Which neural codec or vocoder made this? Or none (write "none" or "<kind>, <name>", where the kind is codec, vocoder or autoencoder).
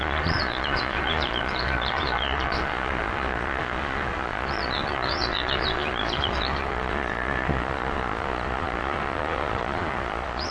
vocoder, Vocos